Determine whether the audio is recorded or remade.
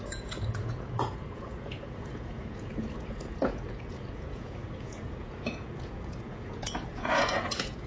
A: remade